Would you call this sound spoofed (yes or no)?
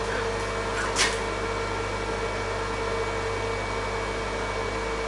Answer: no